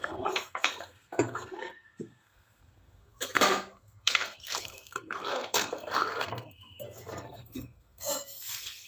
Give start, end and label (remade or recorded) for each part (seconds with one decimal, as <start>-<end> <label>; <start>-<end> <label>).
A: 0.0-8.9 remade